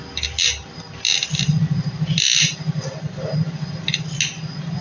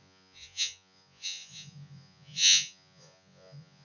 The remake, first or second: second